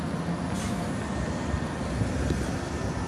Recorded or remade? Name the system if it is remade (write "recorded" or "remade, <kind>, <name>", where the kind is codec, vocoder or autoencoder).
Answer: recorded